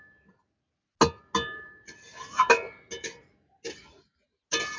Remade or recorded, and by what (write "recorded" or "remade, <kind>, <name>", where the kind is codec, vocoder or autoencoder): recorded